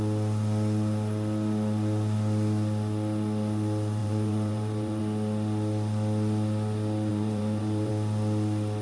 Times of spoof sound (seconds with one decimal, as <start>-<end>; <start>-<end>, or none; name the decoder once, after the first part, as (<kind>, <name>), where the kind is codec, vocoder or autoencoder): 4.0-5.0 (vocoder, BigVGAN v2); 7.1-7.9